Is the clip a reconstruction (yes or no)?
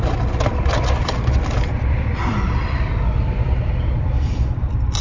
yes